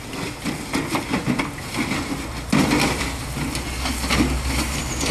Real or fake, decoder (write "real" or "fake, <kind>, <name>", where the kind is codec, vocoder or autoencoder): real